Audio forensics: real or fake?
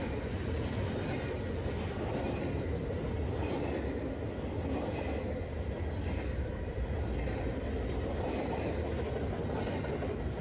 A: real